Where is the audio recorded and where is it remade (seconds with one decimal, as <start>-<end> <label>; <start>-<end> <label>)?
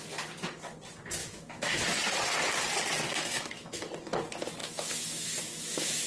0.0-1.2 recorded; 1.2-1.8 remade; 1.8-3.1 recorded; 3.1-3.9 remade; 3.9-4.6 recorded; 4.6-6.1 remade